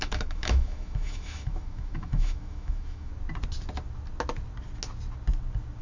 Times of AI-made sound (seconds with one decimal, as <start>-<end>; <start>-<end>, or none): 0.0-3.1